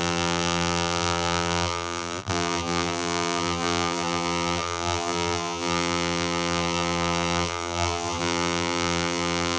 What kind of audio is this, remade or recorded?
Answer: remade